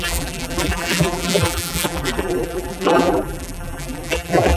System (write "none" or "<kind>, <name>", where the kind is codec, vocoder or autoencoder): vocoder, BigVGAN v2